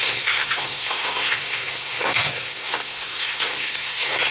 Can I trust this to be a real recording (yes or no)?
no